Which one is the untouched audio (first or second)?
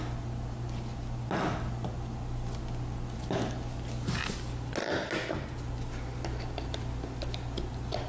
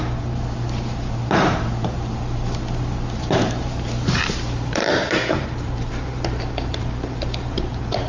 first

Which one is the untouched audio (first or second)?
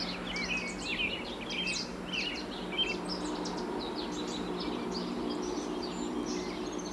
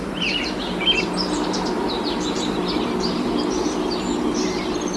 first